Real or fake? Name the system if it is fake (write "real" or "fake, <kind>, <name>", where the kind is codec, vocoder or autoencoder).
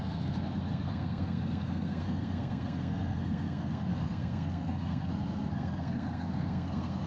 fake, codec, SNAC